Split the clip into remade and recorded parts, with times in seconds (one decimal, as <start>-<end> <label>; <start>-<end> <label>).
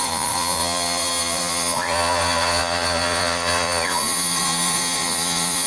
0.0-5.7 remade